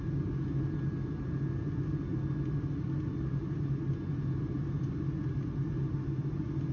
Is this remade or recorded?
recorded